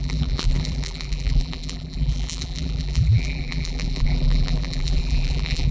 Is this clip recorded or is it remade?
remade